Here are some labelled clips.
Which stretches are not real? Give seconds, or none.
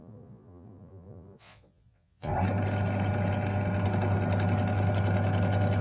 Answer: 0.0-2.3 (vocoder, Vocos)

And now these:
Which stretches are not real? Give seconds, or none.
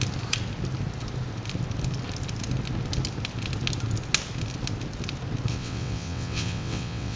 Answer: 5.5-7.2 (vocoder, WaveNeXt)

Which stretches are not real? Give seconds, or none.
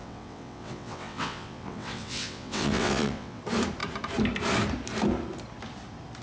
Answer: 0.0-3.4 (vocoder, WaveNeXt)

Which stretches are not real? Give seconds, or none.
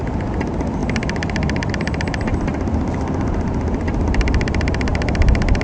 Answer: none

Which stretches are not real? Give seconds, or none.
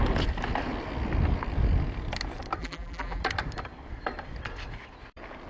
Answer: 2.6-3.2 (vocoder, BigVGAN v2)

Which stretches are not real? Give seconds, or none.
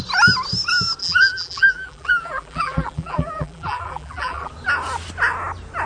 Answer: 1.0-4.5 (vocoder, BigVGAN v2)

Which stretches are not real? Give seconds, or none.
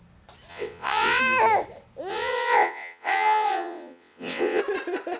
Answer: 0.5-1.2 (vocoder, WaveNeXt); 2.1-4.6